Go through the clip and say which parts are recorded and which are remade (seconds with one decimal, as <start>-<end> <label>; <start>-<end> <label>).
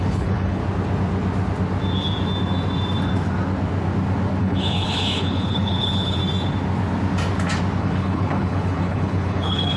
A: 0.0-0.6 remade; 0.6-4.4 recorded; 4.4-6.2 remade; 6.2-7.8 recorded; 7.8-9.8 remade